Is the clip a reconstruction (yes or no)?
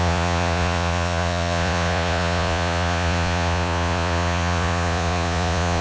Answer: yes